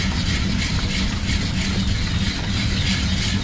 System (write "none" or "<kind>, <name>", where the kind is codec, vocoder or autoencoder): none